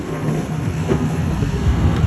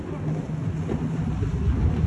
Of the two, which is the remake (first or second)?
first